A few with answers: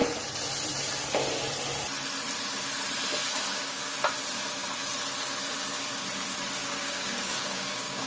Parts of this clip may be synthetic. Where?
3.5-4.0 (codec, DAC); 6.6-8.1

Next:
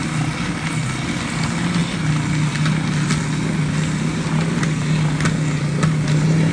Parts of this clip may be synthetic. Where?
none

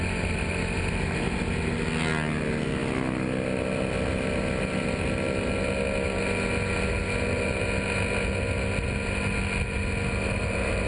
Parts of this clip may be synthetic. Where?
none

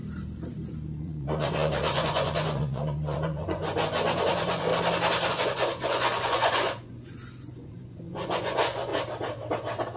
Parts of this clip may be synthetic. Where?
1.0-4.7 (vocoder, Vocos); 5.3-8.9

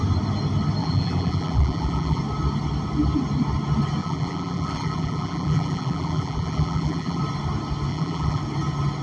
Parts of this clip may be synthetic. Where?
0.8-2.2 (vocoder, BigVGAN v2); 4.0-7.2; 7.9-8.4

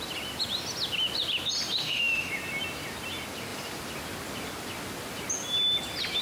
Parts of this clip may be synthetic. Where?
1.8-2.3 (autoencoder, DAC-VAE)

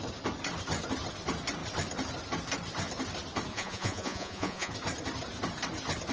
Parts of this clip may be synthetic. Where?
3.5-4.7 (vocoder, Vocos)